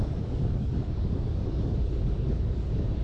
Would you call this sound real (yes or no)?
no